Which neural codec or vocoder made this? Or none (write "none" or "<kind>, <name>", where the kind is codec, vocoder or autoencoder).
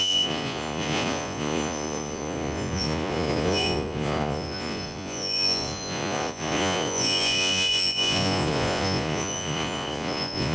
vocoder, Vocos